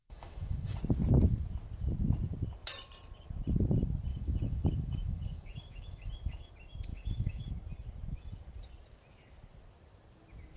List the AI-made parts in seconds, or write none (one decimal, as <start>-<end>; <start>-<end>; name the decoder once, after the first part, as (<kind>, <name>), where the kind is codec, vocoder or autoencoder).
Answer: 0.0-0.8 (autoencoder, DAC-VAE); 4.1-6.5; 6.9-7.5